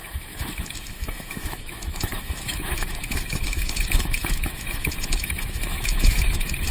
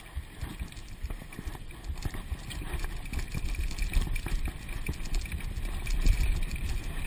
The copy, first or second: first